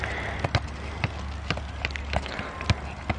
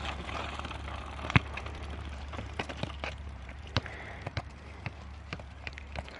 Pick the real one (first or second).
first